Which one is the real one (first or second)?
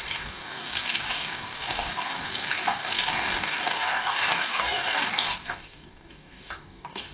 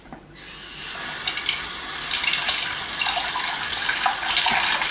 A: second